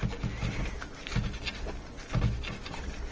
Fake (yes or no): no